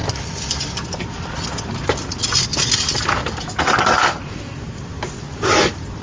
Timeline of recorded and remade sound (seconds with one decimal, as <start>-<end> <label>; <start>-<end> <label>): 0.0-6.0 recorded